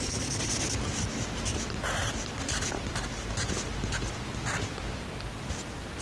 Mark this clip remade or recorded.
recorded